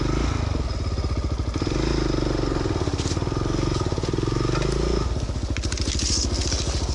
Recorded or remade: recorded